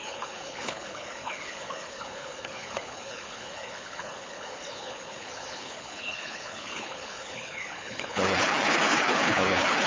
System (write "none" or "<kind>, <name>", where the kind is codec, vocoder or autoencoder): codec, HILCodec